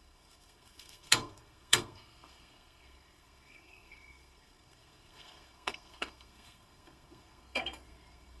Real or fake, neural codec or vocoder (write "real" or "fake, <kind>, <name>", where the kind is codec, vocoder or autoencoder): fake, codec, SNAC